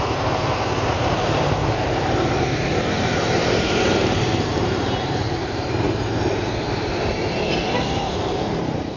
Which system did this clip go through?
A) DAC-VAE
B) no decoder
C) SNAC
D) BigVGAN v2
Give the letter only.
D